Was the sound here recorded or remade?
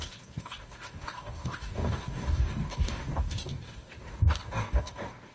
remade